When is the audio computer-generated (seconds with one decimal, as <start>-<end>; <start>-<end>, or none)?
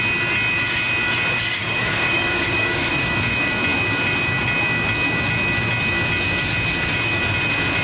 1.6-2.9